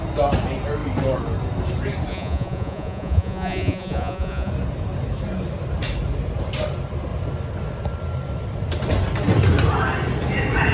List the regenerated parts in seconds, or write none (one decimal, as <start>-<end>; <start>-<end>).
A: 2.1-4.5